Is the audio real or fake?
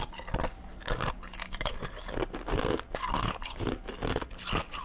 real